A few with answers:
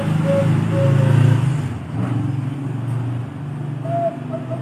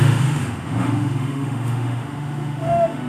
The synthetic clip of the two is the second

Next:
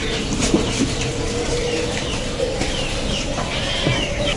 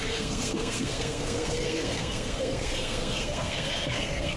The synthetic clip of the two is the second